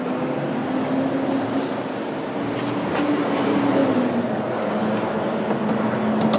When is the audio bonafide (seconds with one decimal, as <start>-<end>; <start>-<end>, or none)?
0.0-6.4